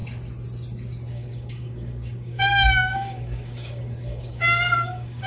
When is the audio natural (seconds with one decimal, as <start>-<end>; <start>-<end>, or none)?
0.0-1.1